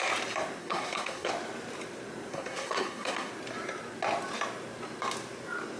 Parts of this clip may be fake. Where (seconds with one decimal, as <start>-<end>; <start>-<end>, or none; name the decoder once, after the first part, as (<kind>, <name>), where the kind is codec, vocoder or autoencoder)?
0.6-1.3 (codec, SNAC); 2.3-3.3